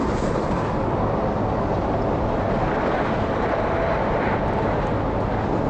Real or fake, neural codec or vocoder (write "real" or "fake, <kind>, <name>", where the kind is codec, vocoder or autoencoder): real